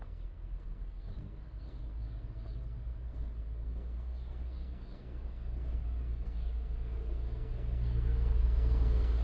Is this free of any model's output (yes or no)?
no